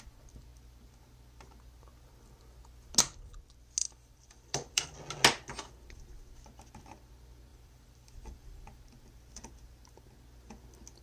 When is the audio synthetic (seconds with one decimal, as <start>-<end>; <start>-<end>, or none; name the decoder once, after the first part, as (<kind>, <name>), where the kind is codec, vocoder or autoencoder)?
3.8-5.0 (vocoder, BigVGAN v2); 7.5-8.8